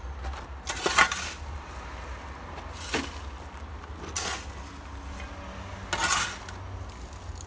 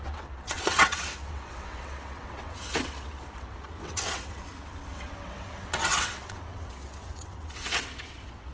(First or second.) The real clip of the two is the first